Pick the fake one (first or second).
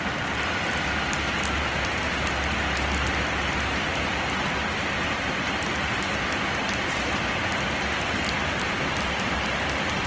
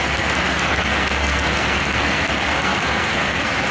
second